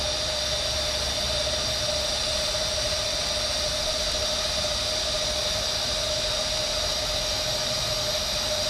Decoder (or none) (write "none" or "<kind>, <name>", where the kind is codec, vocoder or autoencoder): none